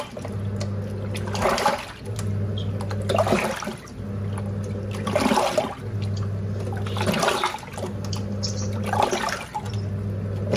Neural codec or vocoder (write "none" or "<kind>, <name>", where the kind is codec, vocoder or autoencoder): none